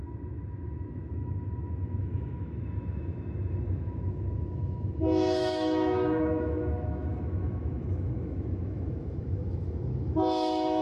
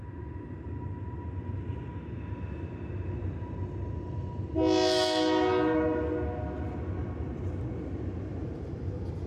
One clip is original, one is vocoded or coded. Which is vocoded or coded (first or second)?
first